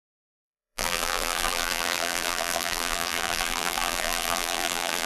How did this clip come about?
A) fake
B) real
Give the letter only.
A